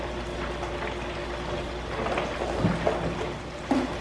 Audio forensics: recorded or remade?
recorded